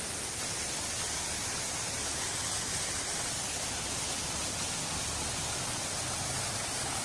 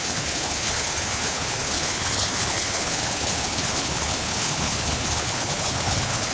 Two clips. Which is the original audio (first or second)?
first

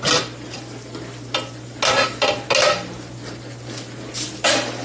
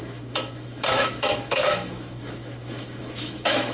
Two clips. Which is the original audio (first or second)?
first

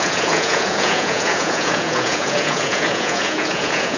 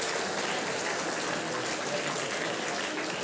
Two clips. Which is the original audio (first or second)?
second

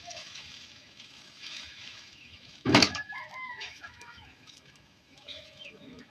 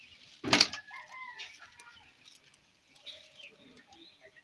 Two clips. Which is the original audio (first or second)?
second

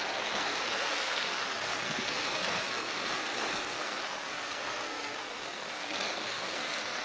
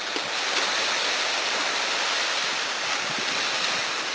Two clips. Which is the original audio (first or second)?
second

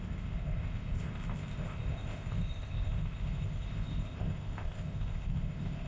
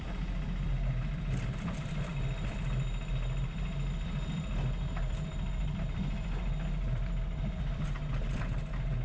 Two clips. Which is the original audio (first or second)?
second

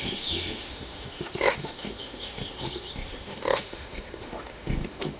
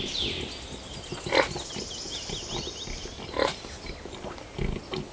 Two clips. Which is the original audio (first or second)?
second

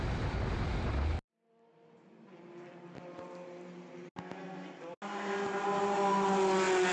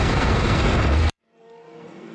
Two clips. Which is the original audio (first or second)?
first